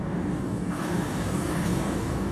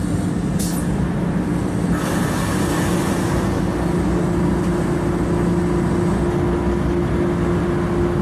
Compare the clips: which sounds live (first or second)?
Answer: second